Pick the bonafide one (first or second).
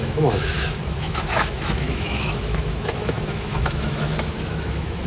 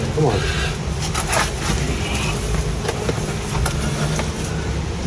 second